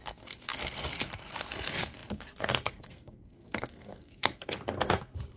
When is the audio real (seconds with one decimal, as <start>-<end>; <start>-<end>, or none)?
none